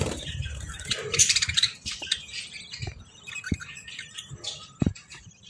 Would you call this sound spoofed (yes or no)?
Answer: yes